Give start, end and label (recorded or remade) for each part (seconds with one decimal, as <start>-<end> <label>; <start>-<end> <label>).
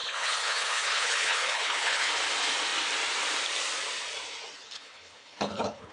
0.0-2.1 remade; 2.1-4.6 recorded; 4.6-5.9 remade